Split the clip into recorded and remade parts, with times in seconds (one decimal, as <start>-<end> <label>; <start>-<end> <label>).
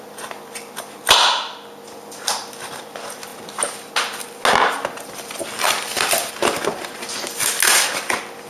0.0-8.5 recorded